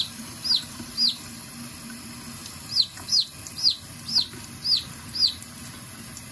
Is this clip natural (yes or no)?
yes